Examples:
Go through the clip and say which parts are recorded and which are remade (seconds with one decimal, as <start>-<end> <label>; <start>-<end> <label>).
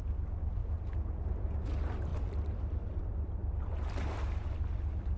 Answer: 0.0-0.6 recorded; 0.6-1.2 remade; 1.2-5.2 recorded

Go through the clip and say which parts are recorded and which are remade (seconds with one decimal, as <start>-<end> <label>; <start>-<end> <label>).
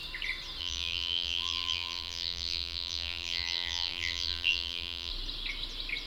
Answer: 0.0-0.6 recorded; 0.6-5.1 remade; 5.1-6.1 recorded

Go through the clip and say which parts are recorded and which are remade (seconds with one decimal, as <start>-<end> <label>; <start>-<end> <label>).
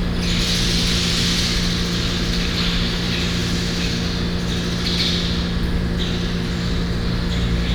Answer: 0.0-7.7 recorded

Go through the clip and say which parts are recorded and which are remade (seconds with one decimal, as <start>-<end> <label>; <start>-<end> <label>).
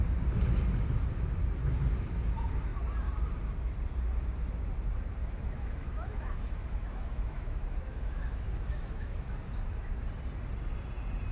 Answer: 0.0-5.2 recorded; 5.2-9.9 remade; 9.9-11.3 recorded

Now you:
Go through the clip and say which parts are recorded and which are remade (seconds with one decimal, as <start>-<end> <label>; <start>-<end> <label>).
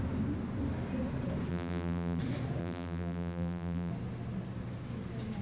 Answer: 0.0-1.5 recorded; 1.5-2.2 remade; 2.2-2.6 recorded; 2.6-3.9 remade; 3.9-5.4 recorded